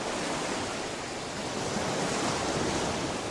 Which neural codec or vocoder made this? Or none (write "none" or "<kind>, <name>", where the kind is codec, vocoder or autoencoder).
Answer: none